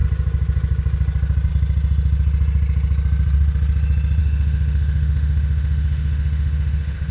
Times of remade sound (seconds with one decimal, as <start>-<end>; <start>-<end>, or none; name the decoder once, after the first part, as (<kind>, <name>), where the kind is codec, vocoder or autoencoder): 4.2-7.1 (autoencoder, DAC-VAE)